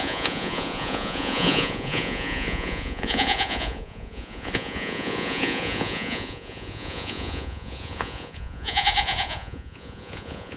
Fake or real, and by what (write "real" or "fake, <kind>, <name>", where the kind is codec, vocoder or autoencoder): fake, vocoder, Vocos